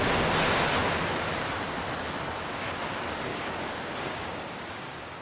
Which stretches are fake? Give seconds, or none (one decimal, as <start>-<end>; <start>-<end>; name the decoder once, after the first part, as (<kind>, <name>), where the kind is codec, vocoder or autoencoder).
3.3-5.2 (codec, DAC)